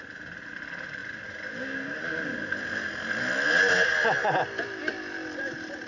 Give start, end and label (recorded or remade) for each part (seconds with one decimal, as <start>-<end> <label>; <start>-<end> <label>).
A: 0.0-5.9 recorded